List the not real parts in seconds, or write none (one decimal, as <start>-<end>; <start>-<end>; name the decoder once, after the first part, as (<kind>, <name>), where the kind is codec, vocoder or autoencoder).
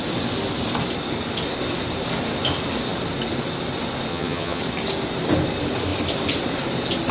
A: 4.1-4.6 (vocoder, HiFi-GAN)